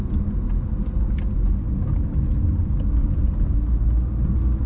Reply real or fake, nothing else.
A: real